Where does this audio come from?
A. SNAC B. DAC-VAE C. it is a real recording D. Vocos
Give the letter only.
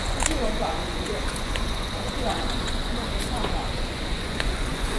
D